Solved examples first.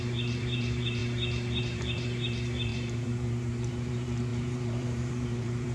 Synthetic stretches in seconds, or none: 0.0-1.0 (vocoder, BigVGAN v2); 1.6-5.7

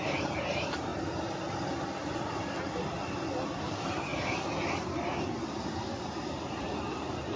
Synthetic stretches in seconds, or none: 0.0-0.9 (vocoder, BigVGAN v2); 3.6-4.1; 6.5-7.4